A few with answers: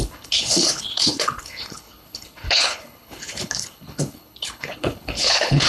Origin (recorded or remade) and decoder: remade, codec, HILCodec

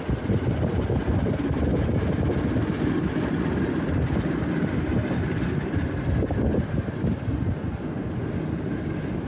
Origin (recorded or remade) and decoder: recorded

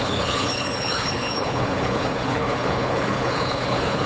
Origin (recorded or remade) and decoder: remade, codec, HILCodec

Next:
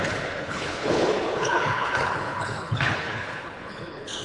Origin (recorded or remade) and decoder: remade, codec, HILCodec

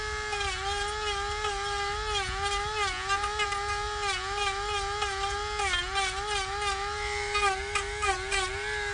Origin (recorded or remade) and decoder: recorded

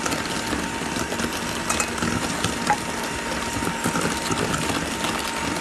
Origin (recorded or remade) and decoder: recorded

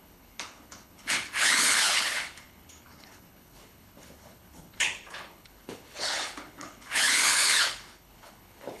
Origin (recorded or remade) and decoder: remade, codec, HILCodec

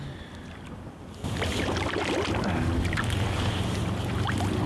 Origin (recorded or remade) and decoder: recorded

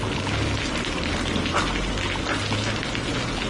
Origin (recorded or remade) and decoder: recorded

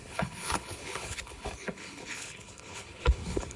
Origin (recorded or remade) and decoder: remade, codec, HILCodec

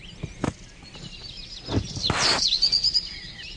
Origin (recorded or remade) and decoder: recorded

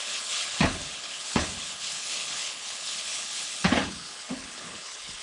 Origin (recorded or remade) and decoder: remade, codec, HILCodec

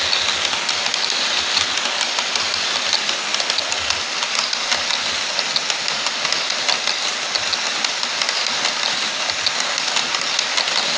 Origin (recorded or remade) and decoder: recorded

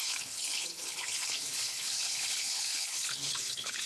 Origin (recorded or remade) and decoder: remade, codec, HILCodec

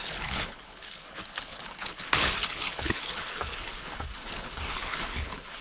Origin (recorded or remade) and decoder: remade, codec, HILCodec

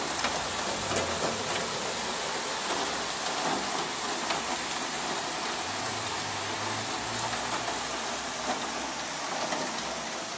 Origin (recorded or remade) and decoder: recorded